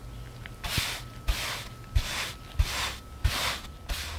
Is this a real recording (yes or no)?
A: yes